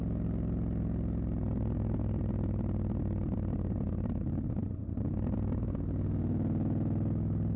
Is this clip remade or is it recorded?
recorded